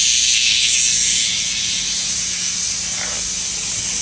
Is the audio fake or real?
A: real